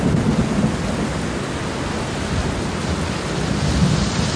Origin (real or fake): real